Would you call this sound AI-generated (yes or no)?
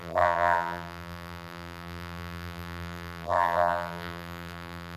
yes